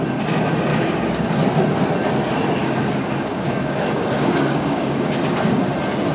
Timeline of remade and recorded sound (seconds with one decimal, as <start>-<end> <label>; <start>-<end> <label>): 0.0-0.7 recorded; 0.7-1.3 remade; 1.3-2.6 recorded; 2.6-5.6 remade; 5.6-6.1 recorded